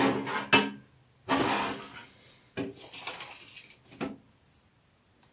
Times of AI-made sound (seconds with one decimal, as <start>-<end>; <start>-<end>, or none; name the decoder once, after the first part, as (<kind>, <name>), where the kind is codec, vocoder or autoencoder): none